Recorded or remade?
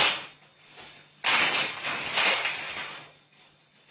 recorded